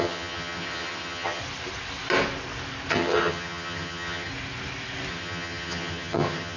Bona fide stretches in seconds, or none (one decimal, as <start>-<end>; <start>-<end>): 1.4-2.9; 4.3-5.1